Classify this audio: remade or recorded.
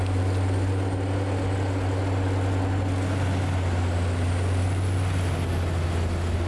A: recorded